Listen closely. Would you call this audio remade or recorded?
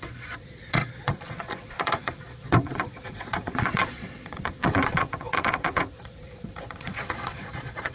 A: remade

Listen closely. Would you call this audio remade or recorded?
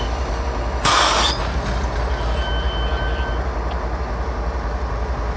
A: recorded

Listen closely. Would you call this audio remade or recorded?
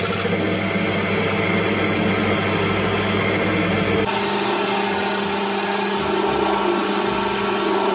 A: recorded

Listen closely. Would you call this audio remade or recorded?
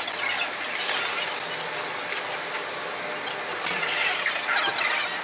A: recorded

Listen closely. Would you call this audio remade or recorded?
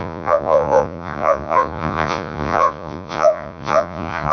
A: remade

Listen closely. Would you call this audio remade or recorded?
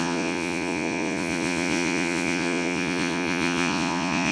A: remade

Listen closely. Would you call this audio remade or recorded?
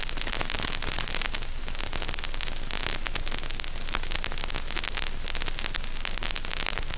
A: recorded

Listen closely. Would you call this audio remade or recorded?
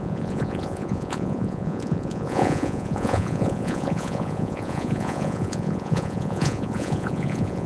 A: remade